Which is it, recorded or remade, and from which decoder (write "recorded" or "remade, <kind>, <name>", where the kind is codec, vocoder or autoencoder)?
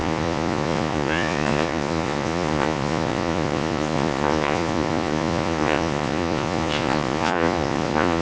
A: remade, vocoder, Vocos